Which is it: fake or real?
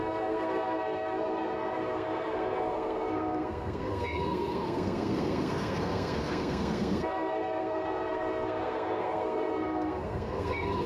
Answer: fake